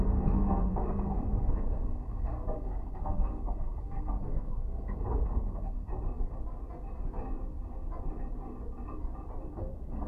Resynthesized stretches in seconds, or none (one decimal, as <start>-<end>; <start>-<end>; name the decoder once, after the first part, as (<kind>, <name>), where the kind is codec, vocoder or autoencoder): 0.0-5.9 (codec, SNAC); 9.5-10.1

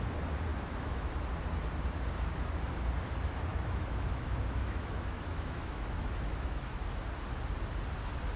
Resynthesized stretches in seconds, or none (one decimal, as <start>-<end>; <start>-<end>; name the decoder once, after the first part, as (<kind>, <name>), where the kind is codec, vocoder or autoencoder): 0.5-1.1 (autoencoder, DAC-VAE); 3.5-6.8

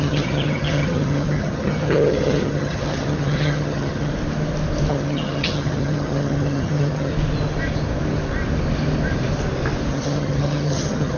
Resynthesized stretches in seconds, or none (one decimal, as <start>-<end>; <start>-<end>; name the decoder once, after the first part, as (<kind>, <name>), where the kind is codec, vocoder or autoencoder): 0.0-4.1 (vocoder, HiFi-GAN); 4.9-7.1; 9.9-11.2

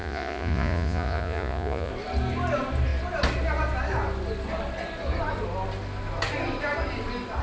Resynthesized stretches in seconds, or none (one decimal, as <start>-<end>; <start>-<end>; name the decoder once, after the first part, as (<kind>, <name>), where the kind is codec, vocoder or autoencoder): 0.0-1.9 (vocoder, Vocos)

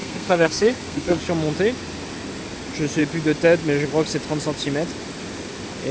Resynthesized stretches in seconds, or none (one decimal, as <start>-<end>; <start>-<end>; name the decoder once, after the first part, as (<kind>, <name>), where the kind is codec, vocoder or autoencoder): 0.0-1.2 (codec, SNAC)

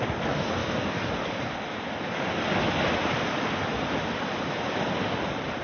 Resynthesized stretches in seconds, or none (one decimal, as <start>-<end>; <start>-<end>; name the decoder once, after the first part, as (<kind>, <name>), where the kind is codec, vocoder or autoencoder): none